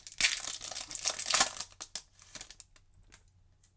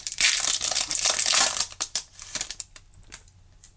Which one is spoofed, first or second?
second